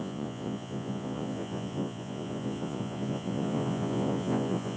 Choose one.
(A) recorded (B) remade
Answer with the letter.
B